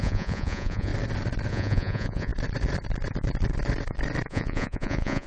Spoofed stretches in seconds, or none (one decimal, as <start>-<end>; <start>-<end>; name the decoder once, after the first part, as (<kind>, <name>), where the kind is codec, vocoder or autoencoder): 0.0-0.9 (vocoder, Vocos); 1.5-2.3; 4.3-5.3